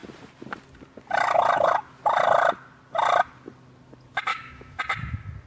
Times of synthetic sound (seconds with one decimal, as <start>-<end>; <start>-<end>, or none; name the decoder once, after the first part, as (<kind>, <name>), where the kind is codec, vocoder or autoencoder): 4.3-4.8 (autoencoder, DAC-VAE)